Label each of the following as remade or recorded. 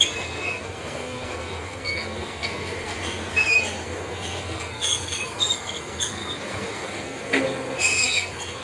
remade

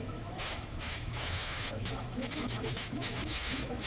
remade